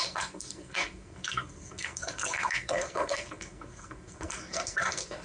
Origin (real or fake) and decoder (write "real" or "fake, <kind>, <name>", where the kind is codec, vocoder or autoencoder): fake, codec, SNAC